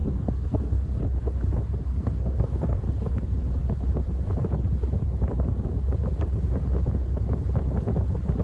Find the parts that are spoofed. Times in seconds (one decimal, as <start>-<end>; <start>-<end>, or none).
0.0-1.0; 1.9-2.8